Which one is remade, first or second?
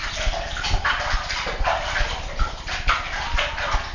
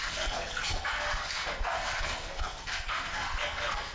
second